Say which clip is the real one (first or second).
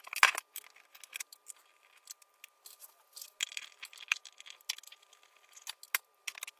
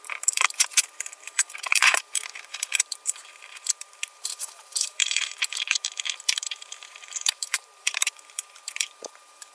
first